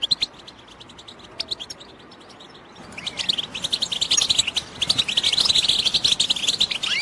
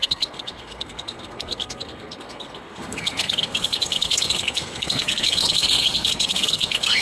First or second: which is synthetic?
second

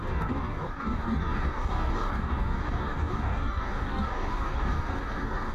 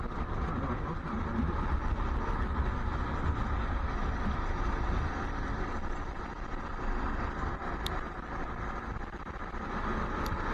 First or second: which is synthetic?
first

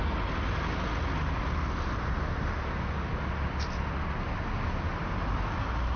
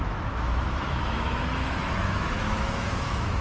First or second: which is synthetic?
second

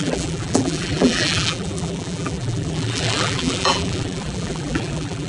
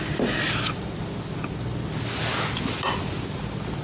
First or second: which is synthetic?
first